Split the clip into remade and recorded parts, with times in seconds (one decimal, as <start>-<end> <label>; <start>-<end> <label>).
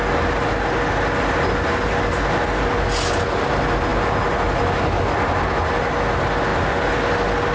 0.0-7.5 recorded